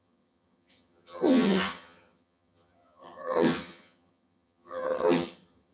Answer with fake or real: fake